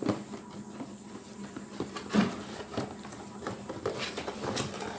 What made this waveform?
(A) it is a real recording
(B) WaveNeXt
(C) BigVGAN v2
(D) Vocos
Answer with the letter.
A